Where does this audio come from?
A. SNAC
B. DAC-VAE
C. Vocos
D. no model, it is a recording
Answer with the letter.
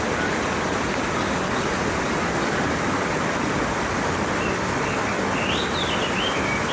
D